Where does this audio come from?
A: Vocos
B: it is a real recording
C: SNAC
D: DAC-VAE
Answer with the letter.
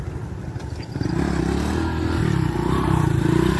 B